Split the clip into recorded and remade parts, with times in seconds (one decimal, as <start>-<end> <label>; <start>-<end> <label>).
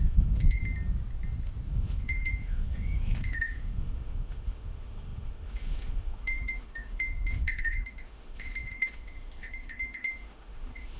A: 0.0-0.6 remade; 0.6-1.7 recorded; 1.7-11.0 remade